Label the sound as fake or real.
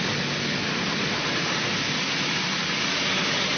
real